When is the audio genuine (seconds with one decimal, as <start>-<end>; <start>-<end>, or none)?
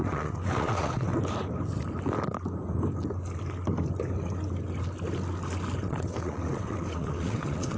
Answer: 1.1-5.8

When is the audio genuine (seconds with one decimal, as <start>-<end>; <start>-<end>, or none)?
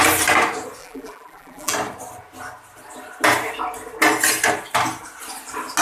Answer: 0.0-0.8; 1.7-5.8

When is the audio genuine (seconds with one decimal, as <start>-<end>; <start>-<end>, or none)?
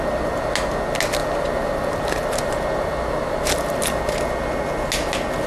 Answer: 0.0-5.5